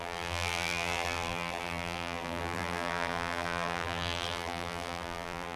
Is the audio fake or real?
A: fake